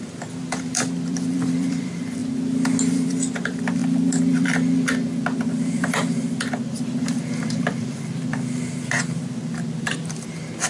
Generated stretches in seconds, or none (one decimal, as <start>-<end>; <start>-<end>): 0.0-2.2; 2.9-10.7

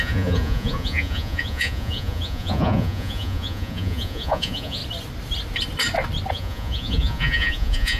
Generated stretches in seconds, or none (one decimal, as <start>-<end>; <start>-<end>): 0.0-4.8; 6.3-8.0

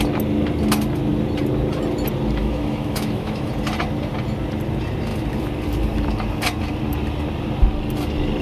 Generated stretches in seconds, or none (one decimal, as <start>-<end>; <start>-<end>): 2.4-3.5

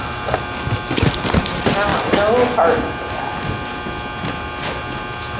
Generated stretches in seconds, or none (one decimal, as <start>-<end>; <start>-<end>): none

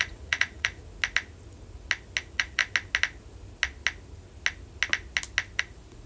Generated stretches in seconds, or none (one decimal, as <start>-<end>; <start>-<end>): 0.0-0.8; 2.2-2.6; 5.6-6.1

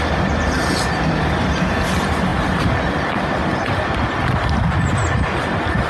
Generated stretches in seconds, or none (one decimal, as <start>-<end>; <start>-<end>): none